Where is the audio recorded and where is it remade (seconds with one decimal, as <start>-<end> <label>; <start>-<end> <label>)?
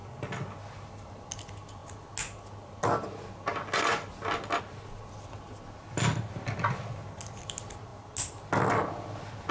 0.0-9.5 recorded